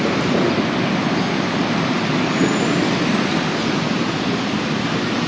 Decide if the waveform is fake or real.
real